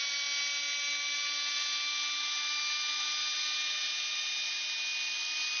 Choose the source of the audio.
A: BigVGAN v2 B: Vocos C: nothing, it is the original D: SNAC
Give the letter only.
C